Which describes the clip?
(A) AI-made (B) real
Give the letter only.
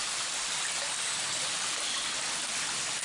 B